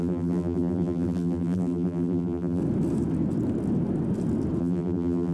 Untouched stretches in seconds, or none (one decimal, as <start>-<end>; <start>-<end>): 2.6-4.6

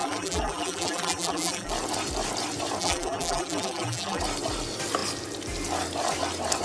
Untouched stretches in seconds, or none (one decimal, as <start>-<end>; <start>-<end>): 1.7-2.8; 4.2-6.6

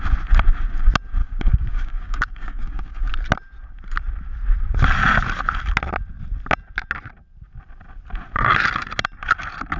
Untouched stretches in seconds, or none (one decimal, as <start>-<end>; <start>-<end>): 0.0-1.2; 3.1-9.8